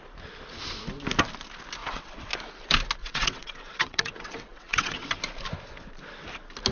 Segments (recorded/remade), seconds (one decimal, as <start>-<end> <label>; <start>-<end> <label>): 0.0-1.8 recorded; 1.8-2.3 remade; 2.3-3.0 recorded; 3.0-5.1 remade; 5.1-6.7 recorded